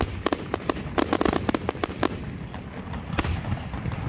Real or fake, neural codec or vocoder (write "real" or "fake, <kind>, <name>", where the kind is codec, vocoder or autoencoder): real